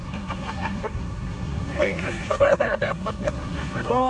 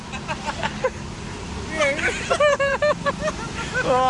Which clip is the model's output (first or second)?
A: first